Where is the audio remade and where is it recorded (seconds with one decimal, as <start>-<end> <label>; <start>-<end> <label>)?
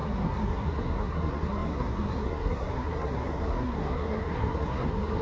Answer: 0.0-5.2 remade